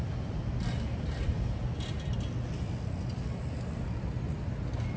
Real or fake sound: real